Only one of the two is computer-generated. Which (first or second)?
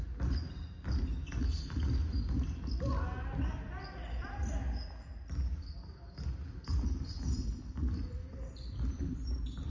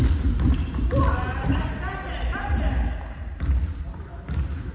second